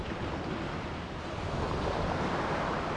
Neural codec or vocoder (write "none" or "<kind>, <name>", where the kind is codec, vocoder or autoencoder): none